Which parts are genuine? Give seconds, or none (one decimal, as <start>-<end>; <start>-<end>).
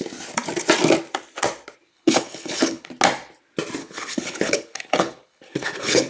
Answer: 0.0-1.9; 2.9-3.8